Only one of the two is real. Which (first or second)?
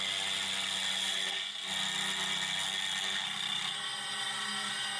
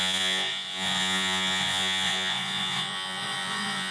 first